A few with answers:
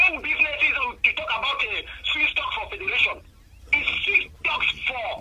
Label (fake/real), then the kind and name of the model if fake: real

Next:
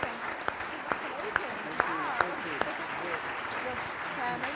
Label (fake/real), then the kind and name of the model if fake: real